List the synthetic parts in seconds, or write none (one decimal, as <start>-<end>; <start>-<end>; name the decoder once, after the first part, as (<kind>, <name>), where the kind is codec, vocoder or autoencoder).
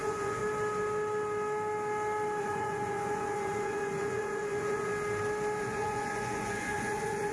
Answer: 0.0-0.4 (vocoder, Vocos); 2.4-4.9; 5.6-7.3